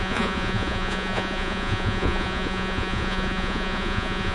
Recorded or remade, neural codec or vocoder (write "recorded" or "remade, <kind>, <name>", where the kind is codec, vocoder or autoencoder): remade, vocoder, Vocos